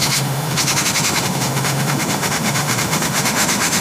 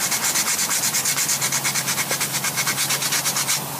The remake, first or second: first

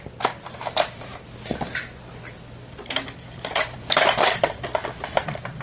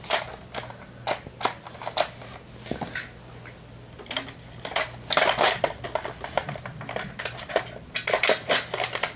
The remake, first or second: first